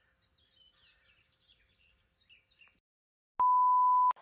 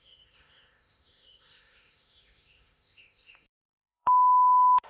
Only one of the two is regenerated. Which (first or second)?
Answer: second